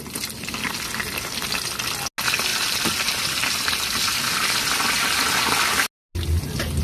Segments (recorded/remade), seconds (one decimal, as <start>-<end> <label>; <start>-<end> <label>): 0.0-2.5 recorded; 2.5-4.2 remade; 4.2-6.8 recorded